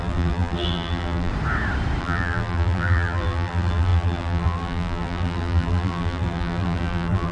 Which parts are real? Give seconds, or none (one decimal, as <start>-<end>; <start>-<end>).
1.3-2.0